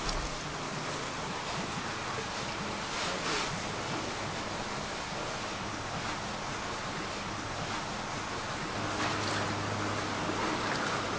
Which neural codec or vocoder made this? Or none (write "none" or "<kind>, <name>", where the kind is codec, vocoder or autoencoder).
none